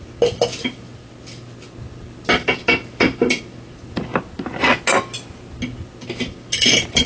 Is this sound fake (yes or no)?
no